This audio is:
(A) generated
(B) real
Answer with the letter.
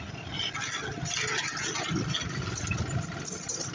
B